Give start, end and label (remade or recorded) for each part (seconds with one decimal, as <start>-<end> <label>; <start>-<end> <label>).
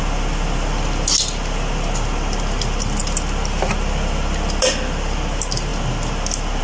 0.0-6.6 recorded